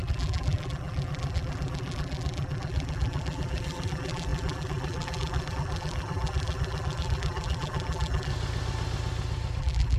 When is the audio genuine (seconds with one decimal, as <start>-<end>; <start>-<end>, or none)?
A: 8.3-9.6